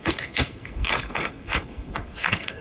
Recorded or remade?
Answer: remade